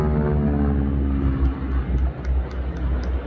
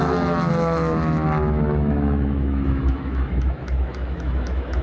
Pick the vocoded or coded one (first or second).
second